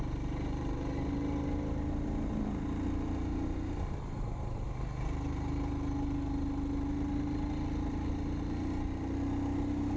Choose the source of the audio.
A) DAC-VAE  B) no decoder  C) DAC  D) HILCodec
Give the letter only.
B